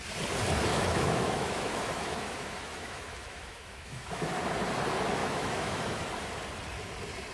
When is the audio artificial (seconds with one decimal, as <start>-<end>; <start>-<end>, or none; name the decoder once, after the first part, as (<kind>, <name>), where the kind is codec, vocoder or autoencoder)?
0.7-4.4 (autoencoder, DAC-VAE); 5.2-6.0